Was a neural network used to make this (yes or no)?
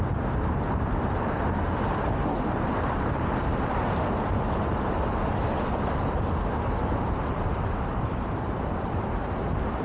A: yes